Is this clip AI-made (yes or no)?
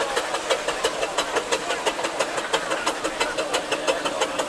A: no